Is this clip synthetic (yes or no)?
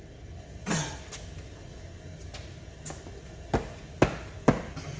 no